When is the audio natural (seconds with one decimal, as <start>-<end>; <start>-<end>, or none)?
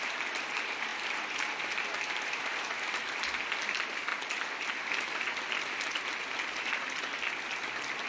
0.0-8.1